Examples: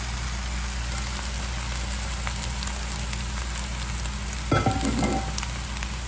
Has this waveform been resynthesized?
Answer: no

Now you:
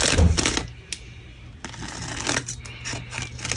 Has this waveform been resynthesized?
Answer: no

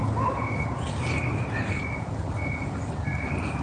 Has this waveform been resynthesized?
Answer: no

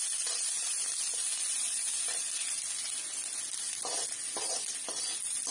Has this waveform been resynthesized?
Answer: no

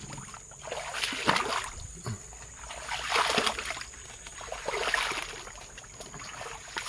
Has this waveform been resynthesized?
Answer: no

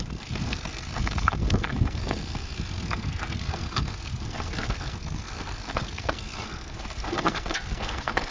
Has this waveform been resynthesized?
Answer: yes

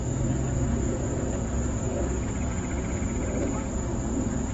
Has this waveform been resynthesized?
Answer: no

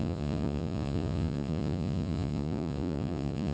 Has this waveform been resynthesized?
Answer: yes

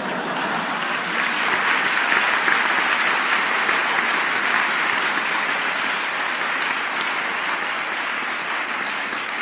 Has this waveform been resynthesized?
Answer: no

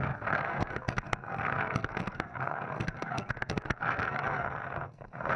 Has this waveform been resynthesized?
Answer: yes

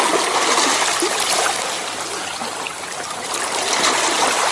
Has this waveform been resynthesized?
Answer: no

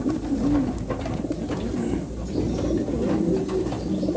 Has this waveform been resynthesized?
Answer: no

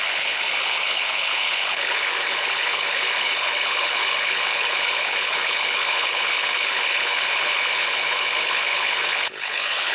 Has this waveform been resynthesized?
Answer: yes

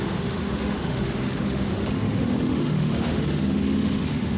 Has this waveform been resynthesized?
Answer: yes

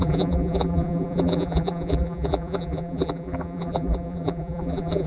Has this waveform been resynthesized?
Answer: yes